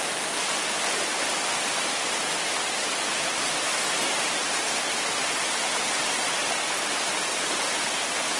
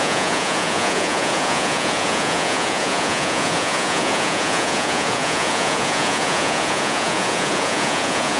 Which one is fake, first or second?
second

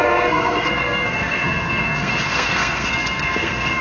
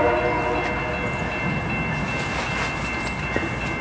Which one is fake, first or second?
first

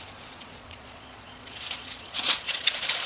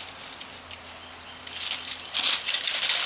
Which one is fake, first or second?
first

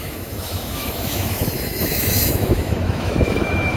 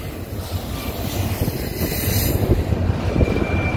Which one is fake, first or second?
first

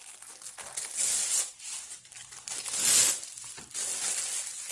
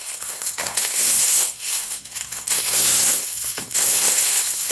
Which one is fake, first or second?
second